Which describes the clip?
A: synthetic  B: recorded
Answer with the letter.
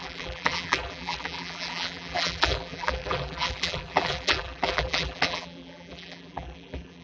A